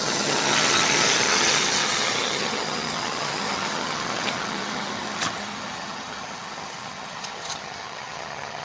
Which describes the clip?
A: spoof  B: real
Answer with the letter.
A